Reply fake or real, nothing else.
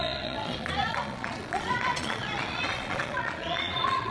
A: fake